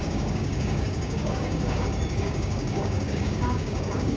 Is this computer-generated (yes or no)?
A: yes